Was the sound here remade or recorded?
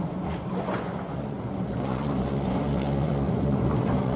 remade